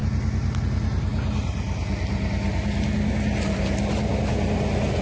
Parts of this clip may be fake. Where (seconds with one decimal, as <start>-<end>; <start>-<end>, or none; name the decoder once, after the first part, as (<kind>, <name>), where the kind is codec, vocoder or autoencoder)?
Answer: none